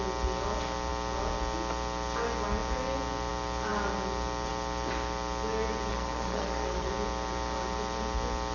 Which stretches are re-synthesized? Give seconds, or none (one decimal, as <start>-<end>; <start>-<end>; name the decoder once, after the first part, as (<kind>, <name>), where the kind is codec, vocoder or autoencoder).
5.9-6.9 (codec, SNAC)